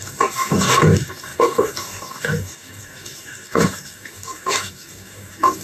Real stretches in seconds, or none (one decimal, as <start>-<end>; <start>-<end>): none